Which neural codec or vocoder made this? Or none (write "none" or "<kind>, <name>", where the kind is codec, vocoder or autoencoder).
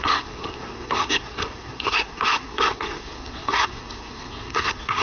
codec, SNAC